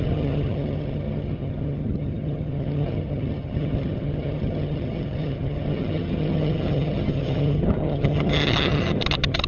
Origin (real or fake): fake